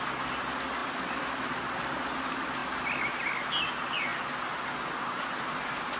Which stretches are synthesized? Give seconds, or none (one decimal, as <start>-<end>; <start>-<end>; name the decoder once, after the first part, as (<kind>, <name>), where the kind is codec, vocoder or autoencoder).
none

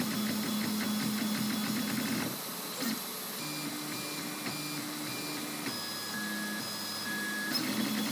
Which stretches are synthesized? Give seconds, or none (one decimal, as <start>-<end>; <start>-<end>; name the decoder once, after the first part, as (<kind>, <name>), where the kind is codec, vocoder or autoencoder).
2.5-3.0 (vocoder, BigVGAN v2)

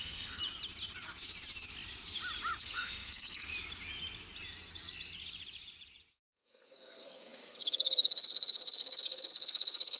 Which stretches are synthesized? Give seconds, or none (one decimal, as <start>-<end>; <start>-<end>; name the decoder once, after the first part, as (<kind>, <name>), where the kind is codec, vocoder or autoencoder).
0.0-0.4 (codec, SNAC); 2.6-3.5; 6.1-10.0

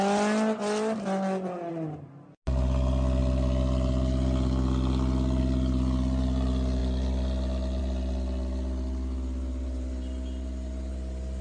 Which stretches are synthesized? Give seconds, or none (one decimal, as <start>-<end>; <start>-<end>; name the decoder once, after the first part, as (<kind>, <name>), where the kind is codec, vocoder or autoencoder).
none

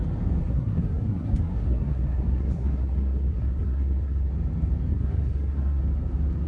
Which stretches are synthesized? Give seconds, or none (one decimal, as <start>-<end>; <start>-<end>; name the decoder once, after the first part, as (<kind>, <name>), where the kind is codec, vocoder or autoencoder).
0.4-4.3 (codec, SNAC); 4.9-5.8